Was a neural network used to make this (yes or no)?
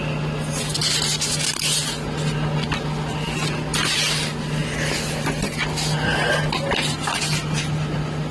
no